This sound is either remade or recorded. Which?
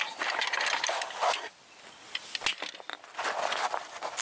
recorded